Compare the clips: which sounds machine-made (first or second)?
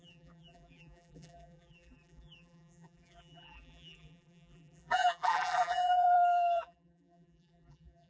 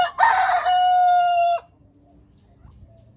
first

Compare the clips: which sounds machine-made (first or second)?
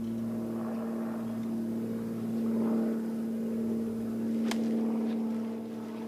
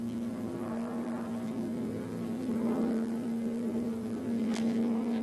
second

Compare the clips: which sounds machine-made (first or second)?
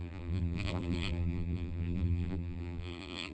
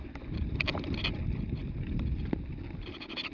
first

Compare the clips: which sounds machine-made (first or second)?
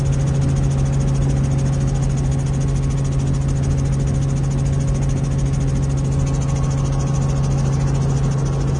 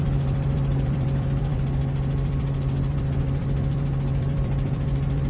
second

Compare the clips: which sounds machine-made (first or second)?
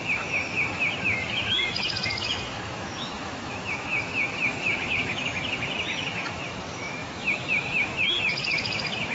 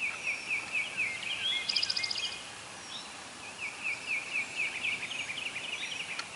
first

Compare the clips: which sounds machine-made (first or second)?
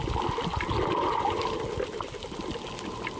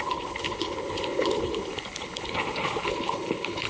second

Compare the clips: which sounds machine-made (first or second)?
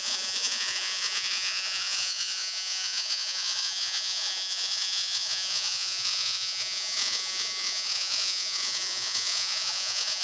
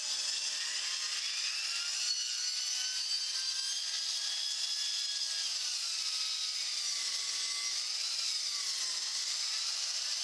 first